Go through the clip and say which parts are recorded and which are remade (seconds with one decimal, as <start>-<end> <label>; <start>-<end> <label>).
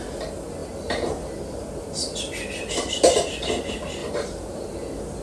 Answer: 0.0-4.0 recorded; 4.0-4.6 remade; 4.6-5.2 recorded